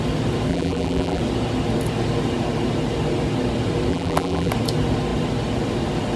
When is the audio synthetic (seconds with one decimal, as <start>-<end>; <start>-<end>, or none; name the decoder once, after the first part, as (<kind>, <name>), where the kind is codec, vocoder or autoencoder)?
0.5-1.2 (vocoder, BigVGAN v2); 3.9-4.5

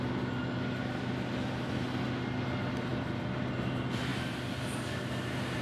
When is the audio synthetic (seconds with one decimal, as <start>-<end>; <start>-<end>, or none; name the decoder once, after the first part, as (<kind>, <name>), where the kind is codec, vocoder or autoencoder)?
4.1-4.7 (vocoder, BigVGAN v2)

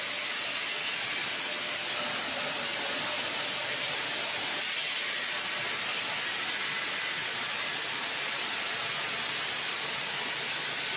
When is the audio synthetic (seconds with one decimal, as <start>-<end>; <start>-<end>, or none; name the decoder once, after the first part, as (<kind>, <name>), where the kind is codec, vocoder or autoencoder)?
none

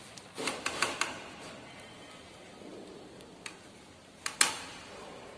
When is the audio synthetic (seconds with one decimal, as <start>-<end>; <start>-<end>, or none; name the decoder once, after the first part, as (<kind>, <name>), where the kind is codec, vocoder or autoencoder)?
none